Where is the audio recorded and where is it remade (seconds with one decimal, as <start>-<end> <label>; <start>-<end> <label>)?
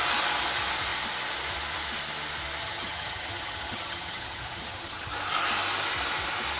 0.0-2.6 recorded; 2.6-5.1 remade; 5.1-6.6 recorded